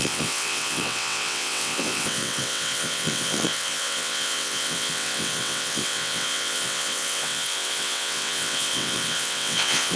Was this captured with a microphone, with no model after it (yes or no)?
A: no